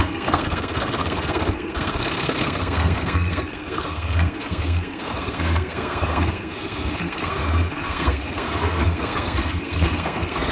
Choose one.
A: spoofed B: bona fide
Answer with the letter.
A